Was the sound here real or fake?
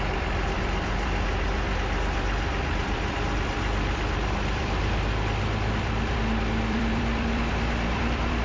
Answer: fake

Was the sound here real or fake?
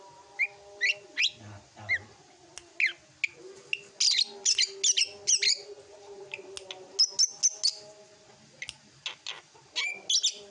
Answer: real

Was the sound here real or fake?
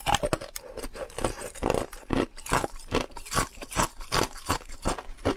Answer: real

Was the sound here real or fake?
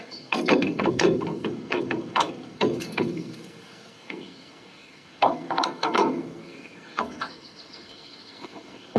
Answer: fake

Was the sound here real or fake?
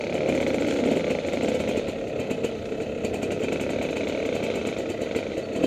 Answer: real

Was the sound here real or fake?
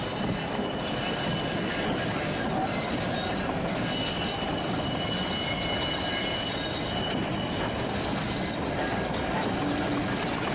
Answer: real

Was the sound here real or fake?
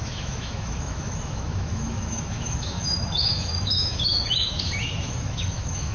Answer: fake